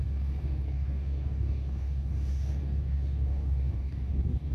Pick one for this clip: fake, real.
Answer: fake